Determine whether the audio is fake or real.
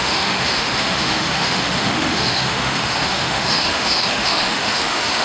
fake